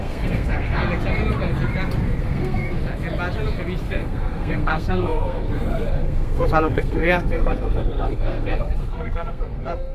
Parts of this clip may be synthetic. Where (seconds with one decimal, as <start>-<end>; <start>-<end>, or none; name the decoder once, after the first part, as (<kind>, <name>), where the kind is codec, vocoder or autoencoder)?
0.0-0.8 (codec, SNAC); 2.2-2.8; 3.8-9.9